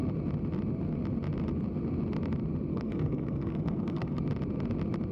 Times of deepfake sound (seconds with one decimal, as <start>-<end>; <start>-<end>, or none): 2.7-4.2